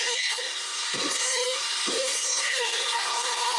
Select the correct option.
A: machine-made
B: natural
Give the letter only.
A